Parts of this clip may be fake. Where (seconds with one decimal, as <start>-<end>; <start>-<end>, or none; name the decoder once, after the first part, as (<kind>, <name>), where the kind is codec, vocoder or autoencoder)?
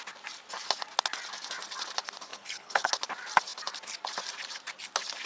2.3-2.9 (codec, HILCodec)